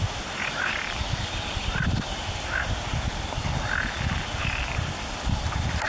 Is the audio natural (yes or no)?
yes